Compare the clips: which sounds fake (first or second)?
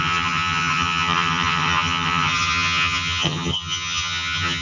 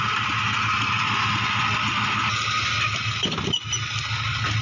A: first